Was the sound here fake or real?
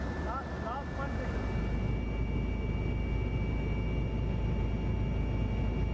real